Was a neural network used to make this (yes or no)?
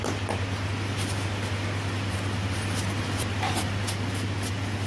no